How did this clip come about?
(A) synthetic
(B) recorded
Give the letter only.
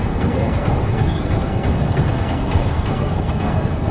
A